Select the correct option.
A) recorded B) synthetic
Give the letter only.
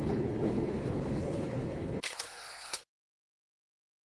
B